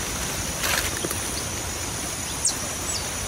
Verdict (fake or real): real